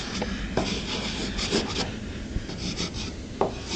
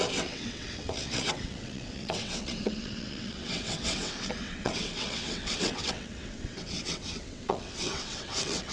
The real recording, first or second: first